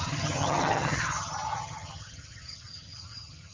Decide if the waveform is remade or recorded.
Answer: remade